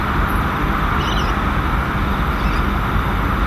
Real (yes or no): yes